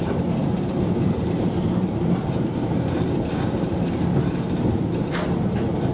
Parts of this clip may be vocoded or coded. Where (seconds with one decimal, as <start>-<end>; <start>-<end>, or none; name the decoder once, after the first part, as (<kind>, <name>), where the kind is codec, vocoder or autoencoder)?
0.4-3.9 (vocoder, BigVGAN v2)

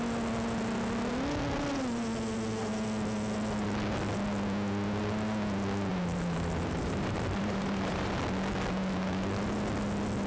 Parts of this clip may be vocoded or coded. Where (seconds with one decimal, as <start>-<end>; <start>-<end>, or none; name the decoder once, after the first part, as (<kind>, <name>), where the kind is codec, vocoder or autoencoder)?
5.9-8.1 (vocoder, BigVGAN v2)

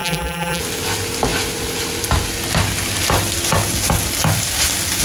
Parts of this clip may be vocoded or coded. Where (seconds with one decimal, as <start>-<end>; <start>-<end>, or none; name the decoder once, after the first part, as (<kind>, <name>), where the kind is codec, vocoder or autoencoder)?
0.0-0.6 (vocoder, BigVGAN v2)

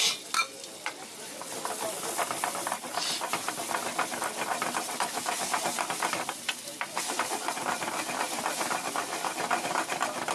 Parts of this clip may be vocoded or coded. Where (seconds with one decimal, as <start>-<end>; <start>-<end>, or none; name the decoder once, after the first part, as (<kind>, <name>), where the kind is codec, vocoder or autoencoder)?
0.0-10.3 (vocoder, BigVGAN v2)

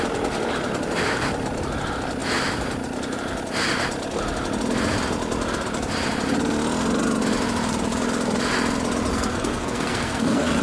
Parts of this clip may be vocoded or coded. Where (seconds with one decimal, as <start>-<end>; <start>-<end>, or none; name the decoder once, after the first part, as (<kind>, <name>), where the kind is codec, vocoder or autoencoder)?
9.1-10.6 (codec, SNAC)

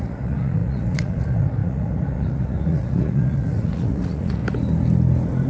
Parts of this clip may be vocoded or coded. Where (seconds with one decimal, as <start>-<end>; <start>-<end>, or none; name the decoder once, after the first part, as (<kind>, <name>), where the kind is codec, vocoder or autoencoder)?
0.0-4.4 (vocoder, Vocos)

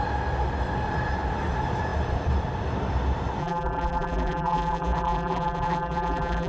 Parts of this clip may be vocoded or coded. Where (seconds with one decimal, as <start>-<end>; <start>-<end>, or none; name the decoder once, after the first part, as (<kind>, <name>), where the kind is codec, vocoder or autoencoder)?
3.4-6.5 (vocoder, BigVGAN v2)

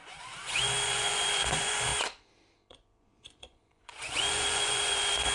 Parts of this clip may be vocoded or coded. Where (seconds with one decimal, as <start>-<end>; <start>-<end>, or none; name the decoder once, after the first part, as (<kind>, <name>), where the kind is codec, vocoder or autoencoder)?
0.0-1.9 (vocoder, Vocos); 2.7-5.3